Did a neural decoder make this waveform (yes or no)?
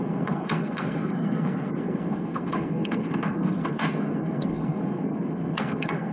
yes